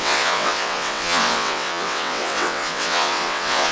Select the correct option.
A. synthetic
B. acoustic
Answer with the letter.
A